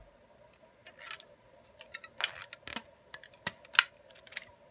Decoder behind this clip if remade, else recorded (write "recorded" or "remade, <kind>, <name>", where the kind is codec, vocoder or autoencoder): recorded